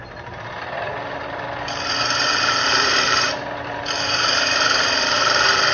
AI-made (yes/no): yes